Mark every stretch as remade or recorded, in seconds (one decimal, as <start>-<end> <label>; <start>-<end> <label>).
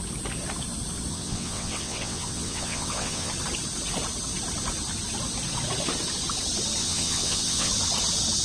0.0-1.1 recorded; 1.1-3.3 remade; 3.3-6.8 recorded; 6.8-7.7 remade; 7.7-8.4 recorded